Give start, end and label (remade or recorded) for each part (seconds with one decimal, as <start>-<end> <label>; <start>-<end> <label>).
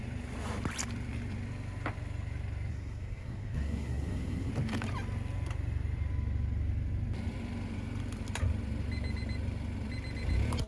0.0-2.7 recorded; 2.7-4.5 remade; 4.5-10.7 recorded